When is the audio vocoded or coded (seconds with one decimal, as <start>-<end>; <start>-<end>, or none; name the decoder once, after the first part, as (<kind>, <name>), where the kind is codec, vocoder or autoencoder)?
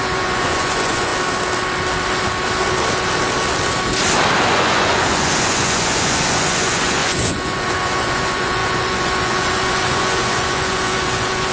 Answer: 0.0-1.1 (vocoder, Vocos); 4.5-11.5